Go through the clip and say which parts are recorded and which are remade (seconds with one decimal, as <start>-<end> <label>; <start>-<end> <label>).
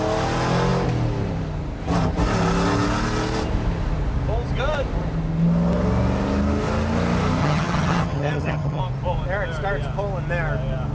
0.0-7.4 recorded; 7.4-8.8 remade; 8.8-10.9 recorded